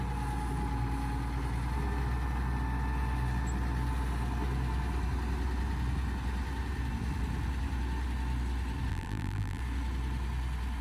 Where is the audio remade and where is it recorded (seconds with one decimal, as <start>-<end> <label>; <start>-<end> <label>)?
0.0-8.9 recorded; 8.9-9.6 remade; 9.6-10.8 recorded